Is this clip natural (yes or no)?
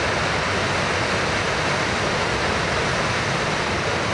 yes